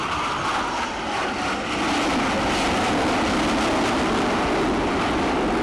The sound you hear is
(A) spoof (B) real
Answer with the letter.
B